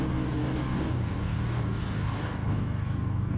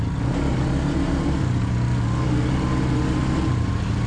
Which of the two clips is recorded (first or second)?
second